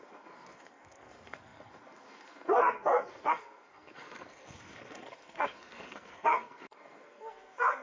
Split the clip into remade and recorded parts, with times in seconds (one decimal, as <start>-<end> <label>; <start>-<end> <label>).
0.0-7.8 remade